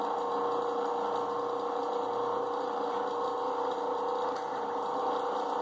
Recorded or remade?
recorded